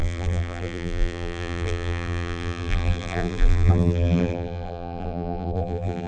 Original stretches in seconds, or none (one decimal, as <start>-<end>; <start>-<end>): none